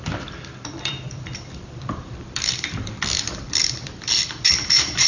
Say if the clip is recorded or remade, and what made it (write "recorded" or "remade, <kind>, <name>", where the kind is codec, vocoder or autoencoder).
remade, vocoder, BigVGAN v2